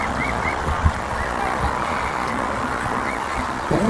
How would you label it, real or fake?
fake